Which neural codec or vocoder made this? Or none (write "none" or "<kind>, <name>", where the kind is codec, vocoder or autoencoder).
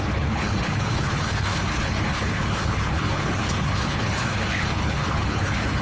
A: codec, HILCodec